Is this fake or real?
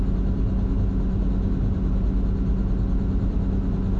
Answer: real